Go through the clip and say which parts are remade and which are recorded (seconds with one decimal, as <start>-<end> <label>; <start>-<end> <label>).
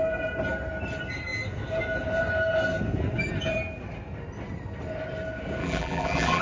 0.0-5.6 recorded; 5.6-6.4 remade